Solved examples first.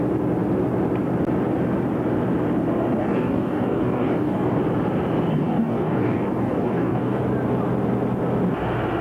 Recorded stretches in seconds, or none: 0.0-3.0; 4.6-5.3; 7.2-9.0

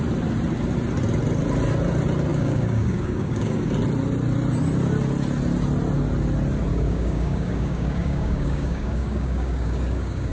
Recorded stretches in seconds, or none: 0.0-2.3; 3.7-6.7

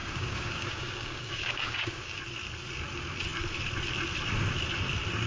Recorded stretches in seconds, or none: 2.2-5.3

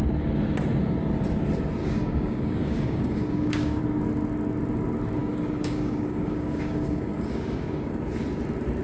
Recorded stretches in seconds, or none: 0.0-1.8; 3.8-5.2; 8.0-8.8